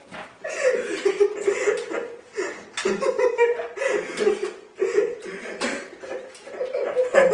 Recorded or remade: recorded